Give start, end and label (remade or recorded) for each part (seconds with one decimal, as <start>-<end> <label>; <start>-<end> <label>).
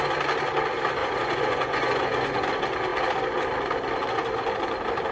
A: 0.0-1.0 recorded; 1.0-2.5 remade; 2.5-5.1 recorded